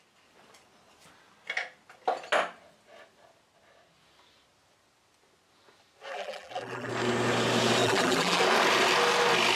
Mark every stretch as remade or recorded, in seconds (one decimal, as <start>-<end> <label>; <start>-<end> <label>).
0.0-6.1 recorded; 6.1-6.9 remade; 6.9-7.8 recorded; 7.8-8.4 remade; 8.4-9.6 recorded